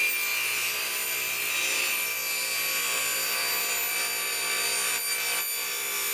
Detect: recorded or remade recorded